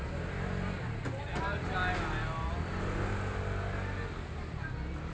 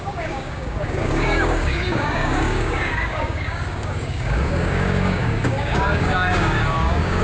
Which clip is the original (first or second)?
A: first